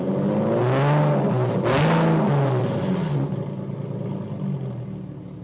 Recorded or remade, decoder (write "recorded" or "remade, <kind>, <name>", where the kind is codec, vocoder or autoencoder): recorded